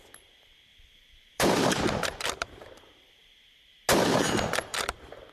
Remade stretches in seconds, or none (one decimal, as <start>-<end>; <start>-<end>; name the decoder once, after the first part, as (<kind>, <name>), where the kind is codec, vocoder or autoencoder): 0.7-3.4 (vocoder, BigVGAN v2); 4.7-5.3